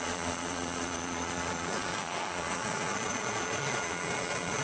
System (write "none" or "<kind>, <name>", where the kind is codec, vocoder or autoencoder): vocoder, Vocos